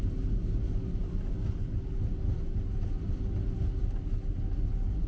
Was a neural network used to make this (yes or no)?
no